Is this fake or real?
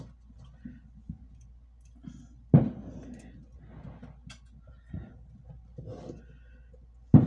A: real